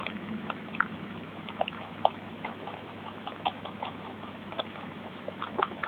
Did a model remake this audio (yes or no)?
yes